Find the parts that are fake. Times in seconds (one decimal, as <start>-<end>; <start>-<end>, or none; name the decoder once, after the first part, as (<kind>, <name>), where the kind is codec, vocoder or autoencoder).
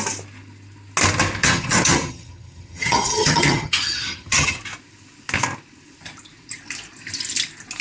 1.4-4.6 (vocoder, HiFi-GAN)